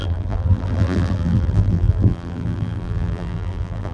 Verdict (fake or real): fake